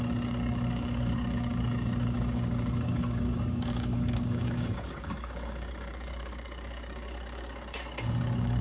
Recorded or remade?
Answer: remade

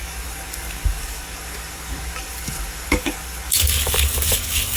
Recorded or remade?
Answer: remade